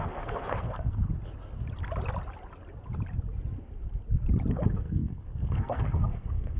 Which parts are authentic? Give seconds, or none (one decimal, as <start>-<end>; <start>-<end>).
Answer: 1.1-4.5